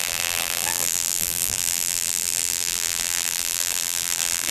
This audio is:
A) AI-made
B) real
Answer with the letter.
A